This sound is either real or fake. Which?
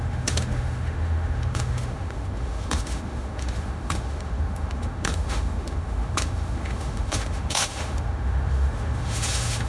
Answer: fake